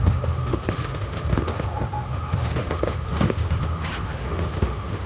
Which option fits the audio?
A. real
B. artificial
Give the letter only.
B